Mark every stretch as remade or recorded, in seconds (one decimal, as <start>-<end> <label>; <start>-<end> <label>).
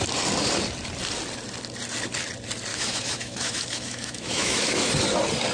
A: 0.0-2.7 recorded; 2.7-4.9 remade; 4.9-5.5 recorded